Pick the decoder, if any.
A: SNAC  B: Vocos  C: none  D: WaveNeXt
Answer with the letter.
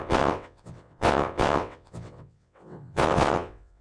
D